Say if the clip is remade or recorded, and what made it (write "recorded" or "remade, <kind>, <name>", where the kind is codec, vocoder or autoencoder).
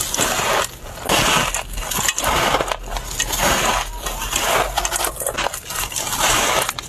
recorded